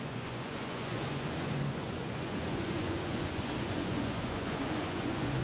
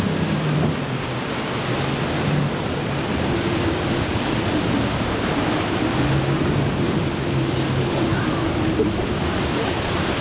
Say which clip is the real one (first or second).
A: second